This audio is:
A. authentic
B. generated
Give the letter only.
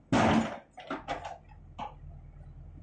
A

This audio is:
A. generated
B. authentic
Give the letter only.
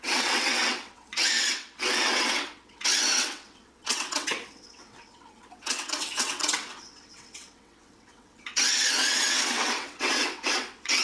A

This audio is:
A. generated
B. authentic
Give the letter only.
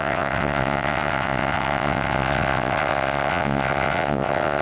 A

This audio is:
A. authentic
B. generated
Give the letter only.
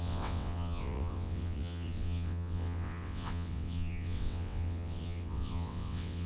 B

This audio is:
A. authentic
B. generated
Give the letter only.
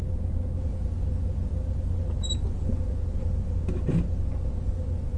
A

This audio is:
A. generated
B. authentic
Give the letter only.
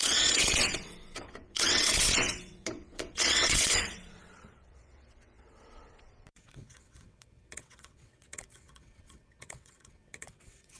A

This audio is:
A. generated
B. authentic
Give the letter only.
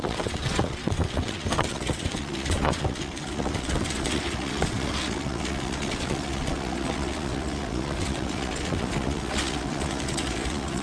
A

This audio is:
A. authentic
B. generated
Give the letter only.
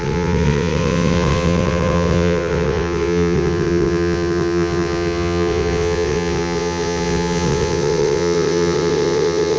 B